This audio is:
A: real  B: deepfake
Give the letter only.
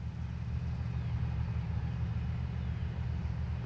A